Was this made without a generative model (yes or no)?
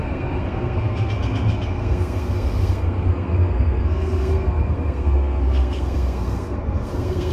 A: no